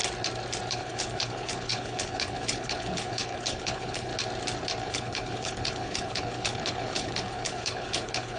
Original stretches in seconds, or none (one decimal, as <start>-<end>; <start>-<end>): 0.0-0.7; 4.1-4.8